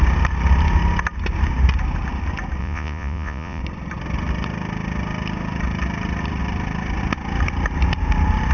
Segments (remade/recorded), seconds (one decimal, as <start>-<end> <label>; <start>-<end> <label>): 0.0-2.6 recorded; 2.6-3.6 remade; 3.6-8.5 recorded